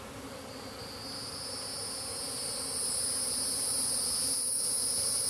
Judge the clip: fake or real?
real